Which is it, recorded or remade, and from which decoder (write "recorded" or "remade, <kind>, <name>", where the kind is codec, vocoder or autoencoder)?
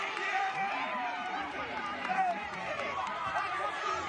remade, vocoder, BigVGAN v2